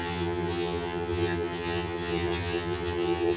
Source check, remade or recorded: remade